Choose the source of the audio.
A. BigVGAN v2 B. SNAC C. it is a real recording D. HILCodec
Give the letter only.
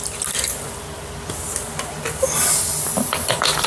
C